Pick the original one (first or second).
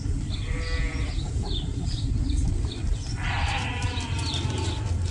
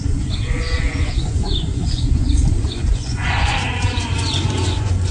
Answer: first